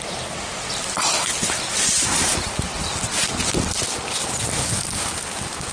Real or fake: real